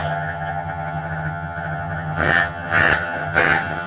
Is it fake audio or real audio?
fake